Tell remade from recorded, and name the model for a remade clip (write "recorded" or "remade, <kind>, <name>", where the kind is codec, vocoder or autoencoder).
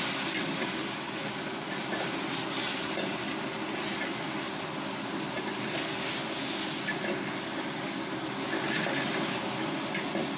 recorded